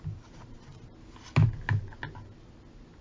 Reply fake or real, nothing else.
real